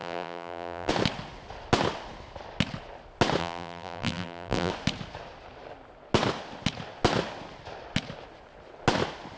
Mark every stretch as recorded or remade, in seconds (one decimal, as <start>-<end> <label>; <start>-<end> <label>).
0.0-0.9 remade; 0.9-3.4 recorded; 3.4-4.7 remade; 4.7-9.4 recorded